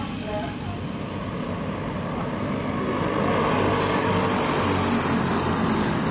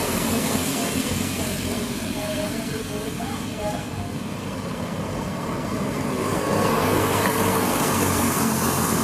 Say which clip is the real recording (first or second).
first